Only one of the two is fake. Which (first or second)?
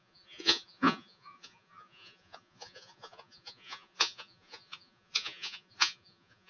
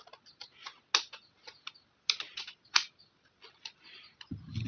first